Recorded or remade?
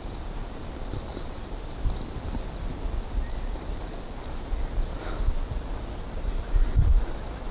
recorded